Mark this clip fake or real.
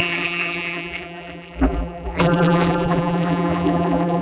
fake